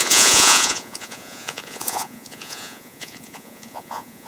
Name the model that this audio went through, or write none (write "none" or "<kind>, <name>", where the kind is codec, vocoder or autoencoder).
vocoder, Vocos